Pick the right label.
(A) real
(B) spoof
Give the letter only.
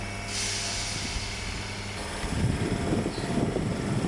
A